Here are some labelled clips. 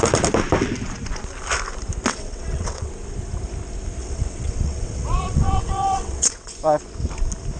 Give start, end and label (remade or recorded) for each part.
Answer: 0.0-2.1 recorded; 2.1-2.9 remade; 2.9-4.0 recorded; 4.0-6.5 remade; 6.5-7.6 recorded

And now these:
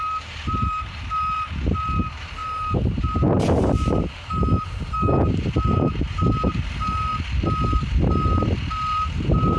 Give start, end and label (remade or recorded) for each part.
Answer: 0.0-7.1 remade; 7.1-8.7 recorded; 8.7-9.6 remade

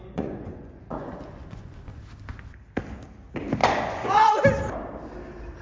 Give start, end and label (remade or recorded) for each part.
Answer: 0.0-2.0 remade; 2.0-3.6 recorded; 3.6-4.4 remade; 4.4-5.6 recorded

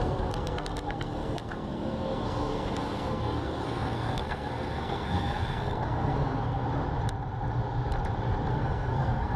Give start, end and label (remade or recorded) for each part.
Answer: 0.0-6.6 remade; 6.6-8.5 recorded; 8.5-9.4 remade

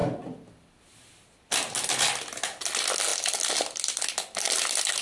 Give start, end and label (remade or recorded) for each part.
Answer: 0.0-3.1 recorded; 3.1-4.1 remade; 4.1-5.0 recorded